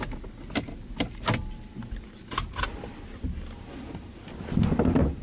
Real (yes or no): yes